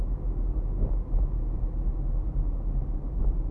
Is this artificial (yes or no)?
no